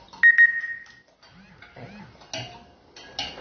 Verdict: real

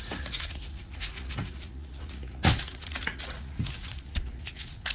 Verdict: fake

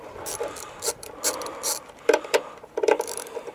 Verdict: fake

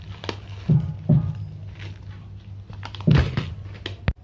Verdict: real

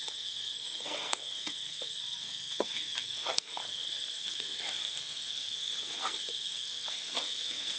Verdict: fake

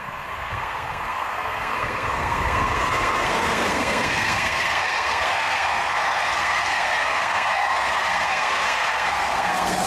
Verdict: fake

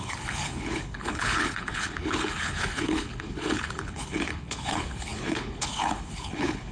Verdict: fake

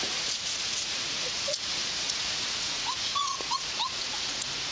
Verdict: fake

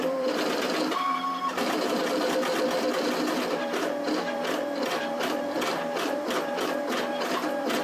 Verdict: fake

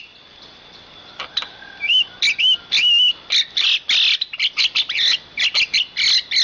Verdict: real